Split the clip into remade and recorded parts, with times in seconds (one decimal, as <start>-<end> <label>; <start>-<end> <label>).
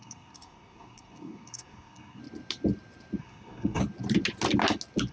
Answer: 0.0-2.2 remade; 2.2-3.2 recorded; 3.2-3.8 remade; 3.8-5.1 recorded